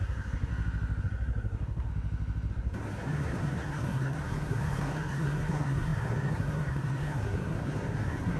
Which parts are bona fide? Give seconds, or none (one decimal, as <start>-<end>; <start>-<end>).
0.5-1.0; 1.9-2.5